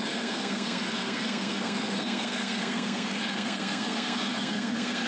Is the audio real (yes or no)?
no